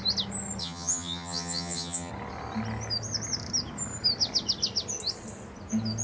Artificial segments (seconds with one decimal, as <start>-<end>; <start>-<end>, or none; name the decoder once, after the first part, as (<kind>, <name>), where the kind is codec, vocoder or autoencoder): 0.6-2.1 (vocoder, HiFi-GAN)